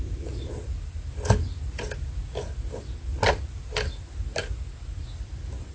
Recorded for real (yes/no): yes